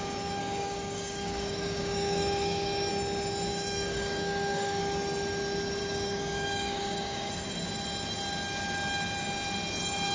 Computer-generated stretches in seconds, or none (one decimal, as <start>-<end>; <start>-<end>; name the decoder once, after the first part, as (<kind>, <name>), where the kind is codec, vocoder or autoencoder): 0.4-2.9 (codec, DAC); 3.5-4.8; 5.8-7.3